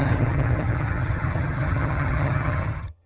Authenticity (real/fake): fake